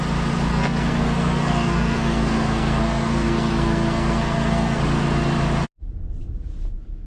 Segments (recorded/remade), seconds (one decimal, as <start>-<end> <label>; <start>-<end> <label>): 0.0-0.5 recorded; 0.5-4.8 remade; 4.8-7.1 recorded